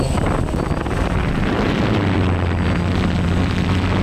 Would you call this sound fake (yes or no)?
no